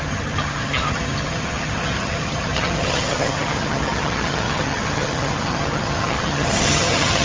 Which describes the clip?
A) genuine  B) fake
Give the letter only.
B